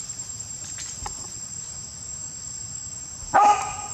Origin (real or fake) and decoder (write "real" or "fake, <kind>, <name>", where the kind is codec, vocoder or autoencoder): fake, vocoder, BigVGAN v2